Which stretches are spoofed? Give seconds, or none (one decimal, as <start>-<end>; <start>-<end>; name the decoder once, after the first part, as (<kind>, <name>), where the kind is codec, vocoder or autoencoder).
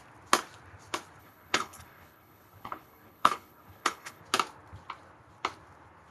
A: 1.2-4.2 (codec, HILCodec)